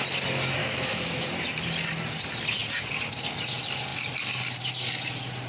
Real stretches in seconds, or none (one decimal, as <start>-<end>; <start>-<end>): 0.0-0.6; 1.3-5.5